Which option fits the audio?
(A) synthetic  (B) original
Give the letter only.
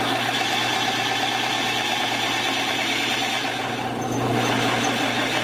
B